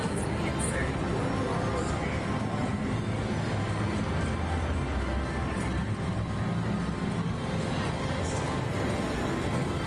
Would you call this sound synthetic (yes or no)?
no